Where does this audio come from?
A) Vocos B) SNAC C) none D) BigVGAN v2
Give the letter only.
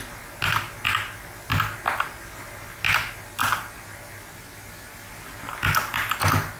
C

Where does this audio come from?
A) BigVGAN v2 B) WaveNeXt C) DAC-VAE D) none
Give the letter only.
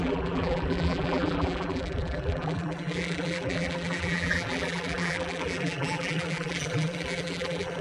A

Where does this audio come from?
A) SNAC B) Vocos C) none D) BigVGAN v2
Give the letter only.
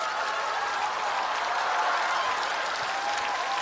C